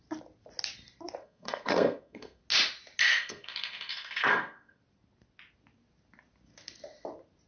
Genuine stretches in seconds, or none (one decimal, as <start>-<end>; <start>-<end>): 0.0-1.2; 2.4-3.2; 4.8-7.5